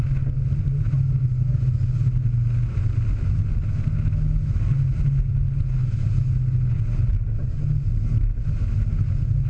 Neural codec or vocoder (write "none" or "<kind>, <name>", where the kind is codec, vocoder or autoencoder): none